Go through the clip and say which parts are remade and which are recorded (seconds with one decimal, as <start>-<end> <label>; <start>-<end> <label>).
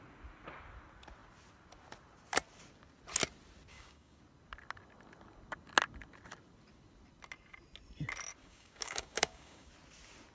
0.0-3.7 recorded; 3.7-4.2 remade; 4.2-8.4 recorded; 8.4-9.7 remade; 9.7-10.3 recorded